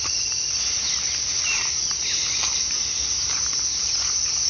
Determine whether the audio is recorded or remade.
recorded